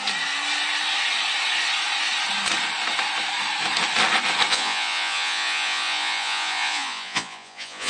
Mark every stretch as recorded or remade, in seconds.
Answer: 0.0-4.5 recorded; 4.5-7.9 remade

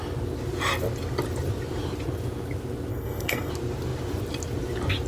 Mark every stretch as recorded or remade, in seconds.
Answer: 0.0-2.9 recorded; 2.9-3.5 remade; 3.5-5.1 recorded

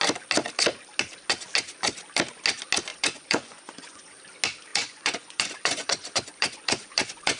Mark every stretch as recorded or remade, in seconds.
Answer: 0.0-2.9 recorded; 2.9-4.2 remade; 4.2-4.7 recorded; 4.7-7.4 remade

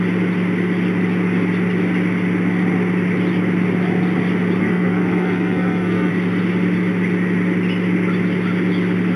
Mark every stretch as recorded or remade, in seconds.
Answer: 0.0-4.6 recorded; 4.6-6.1 remade; 6.1-9.2 recorded

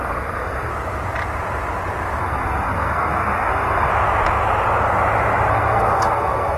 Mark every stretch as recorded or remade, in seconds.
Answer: 0.0-0.7 remade; 0.7-2.2 recorded; 2.2-3.9 remade; 3.9-5.5 recorded; 5.5-6.6 remade

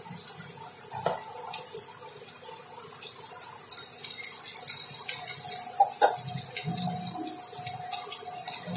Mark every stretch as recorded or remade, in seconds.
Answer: 0.0-8.8 recorded

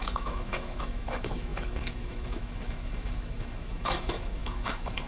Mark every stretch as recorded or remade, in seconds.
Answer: 0.0-5.1 remade

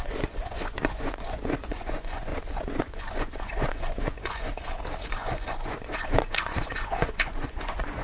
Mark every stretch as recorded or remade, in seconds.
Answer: 0.0-2.3 remade; 2.3-2.8 recorded; 2.8-4.5 remade; 4.5-5.1 recorded; 5.1-8.0 remade